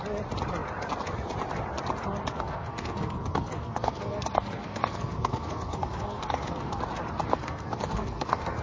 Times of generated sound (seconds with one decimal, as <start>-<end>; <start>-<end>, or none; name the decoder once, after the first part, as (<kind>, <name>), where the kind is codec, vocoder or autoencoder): 2.3-6.8 (codec, SNAC); 7.3-8.6